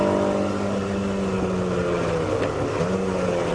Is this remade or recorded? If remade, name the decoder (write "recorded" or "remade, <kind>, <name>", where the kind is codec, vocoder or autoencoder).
recorded